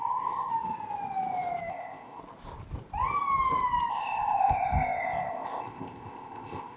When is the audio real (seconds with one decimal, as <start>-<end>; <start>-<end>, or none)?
0.5-1.7; 2.2-3.9